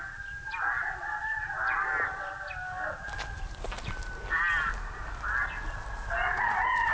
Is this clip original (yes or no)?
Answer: yes